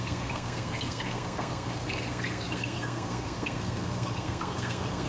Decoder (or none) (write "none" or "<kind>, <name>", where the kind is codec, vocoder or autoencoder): codec, SNAC